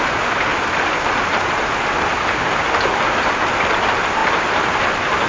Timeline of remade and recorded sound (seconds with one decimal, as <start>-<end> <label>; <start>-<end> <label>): 0.0-4.2 recorded; 4.2-5.3 remade